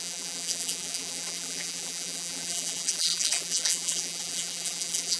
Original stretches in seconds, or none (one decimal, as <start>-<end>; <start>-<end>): none